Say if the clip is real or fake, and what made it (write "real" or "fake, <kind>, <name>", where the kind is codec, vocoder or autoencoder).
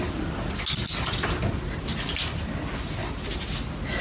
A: real